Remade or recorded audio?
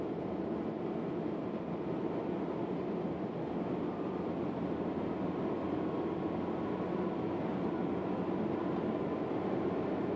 recorded